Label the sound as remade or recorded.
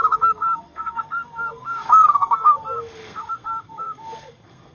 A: remade